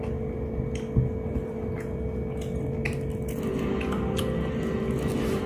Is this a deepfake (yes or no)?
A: no